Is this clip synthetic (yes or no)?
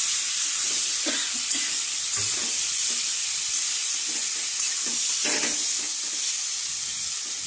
no